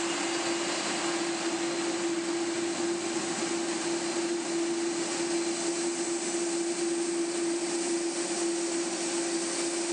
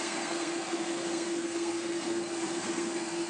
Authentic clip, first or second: first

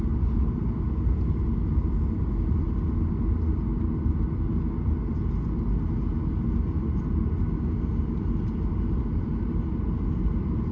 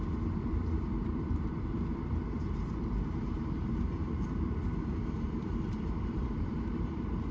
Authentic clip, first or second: first